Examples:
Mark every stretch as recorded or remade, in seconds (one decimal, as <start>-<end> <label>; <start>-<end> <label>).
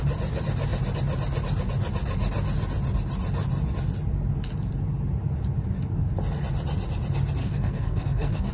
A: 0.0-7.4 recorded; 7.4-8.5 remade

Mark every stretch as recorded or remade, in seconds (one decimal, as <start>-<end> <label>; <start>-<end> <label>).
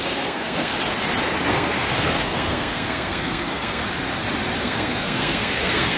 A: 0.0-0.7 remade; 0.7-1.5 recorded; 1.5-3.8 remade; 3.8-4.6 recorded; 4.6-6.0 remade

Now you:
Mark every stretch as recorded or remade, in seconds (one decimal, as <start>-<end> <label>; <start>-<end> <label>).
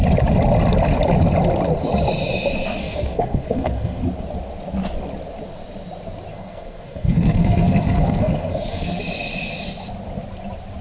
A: 0.0-2.8 recorded; 2.8-4.0 remade; 4.0-6.3 recorded; 6.3-9.0 remade; 9.0-10.8 recorded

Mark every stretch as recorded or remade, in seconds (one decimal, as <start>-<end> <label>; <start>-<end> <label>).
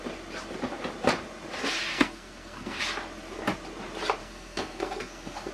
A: 0.0-1.9 recorded; 1.9-2.8 remade; 2.8-4.2 recorded; 4.2-5.5 remade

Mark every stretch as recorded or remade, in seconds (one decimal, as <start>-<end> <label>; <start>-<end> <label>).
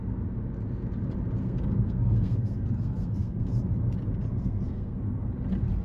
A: 0.0-1.4 recorded; 1.4-3.6 remade; 3.6-4.3 recorded; 4.3-5.0 remade; 5.0-5.8 recorded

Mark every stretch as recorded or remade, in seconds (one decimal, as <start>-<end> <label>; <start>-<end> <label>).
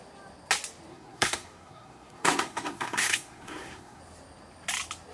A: 0.0-0.9 recorded; 0.9-4.0 remade; 4.0-5.1 recorded